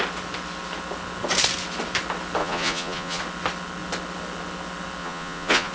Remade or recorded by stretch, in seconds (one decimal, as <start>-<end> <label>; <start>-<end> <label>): 0.0-2.4 recorded; 2.4-3.2 remade; 3.2-5.0 recorded; 5.0-5.7 remade